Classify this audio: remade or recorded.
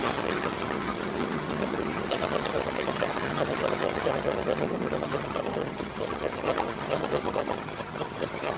remade